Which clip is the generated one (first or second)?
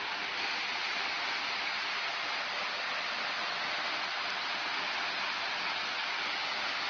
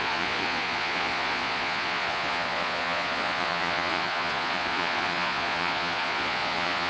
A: second